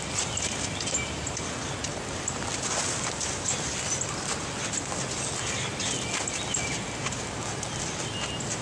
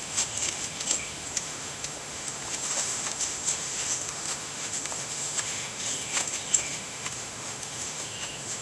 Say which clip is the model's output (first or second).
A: second